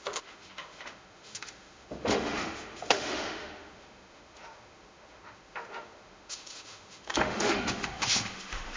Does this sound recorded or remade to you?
remade